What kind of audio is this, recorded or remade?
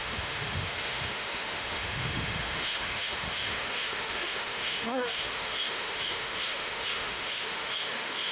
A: remade